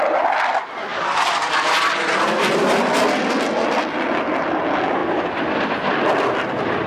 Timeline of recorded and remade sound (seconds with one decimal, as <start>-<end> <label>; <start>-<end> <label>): 0.0-0.9 recorded; 0.9-4.6 remade; 4.6-6.9 recorded